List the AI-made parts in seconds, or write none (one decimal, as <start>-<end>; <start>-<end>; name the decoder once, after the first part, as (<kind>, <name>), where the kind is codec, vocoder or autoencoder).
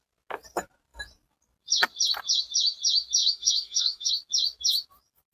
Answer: 3.2-4.1 (autoencoder, DAC-VAE)